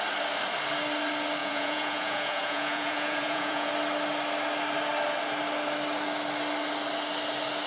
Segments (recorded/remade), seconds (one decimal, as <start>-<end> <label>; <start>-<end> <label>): 0.0-1.4 recorded; 1.4-3.7 remade; 3.7-7.7 recorded